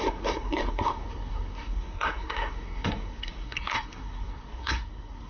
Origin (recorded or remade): remade